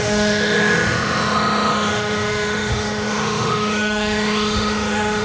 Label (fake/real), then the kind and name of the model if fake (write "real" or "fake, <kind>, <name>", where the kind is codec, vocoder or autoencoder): fake, autoencoder, DAC-VAE